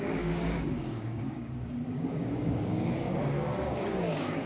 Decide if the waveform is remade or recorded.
remade